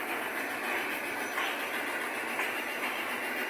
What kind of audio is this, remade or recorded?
recorded